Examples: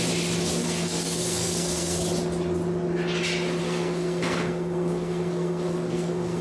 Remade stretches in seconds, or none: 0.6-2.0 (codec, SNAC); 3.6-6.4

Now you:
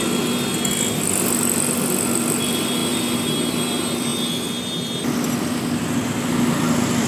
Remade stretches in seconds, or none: none

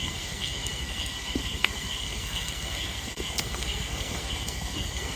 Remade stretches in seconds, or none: 0.0-5.2 (codec, SNAC)

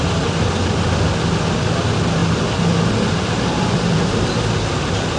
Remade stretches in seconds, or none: none

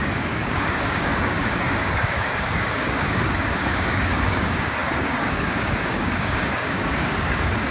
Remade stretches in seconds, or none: 0.0-7.7 (codec, DAC)

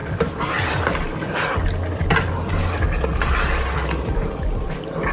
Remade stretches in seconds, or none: 1.9-5.1 (vocoder, BigVGAN v2)

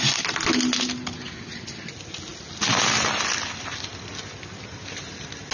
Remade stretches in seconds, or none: none

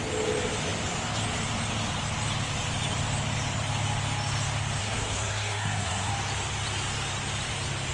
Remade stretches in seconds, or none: 4.8-6.1 (codec, SNAC)